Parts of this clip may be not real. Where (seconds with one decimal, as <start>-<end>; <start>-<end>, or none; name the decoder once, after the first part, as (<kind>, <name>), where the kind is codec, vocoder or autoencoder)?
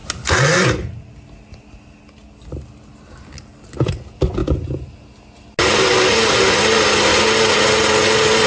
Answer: none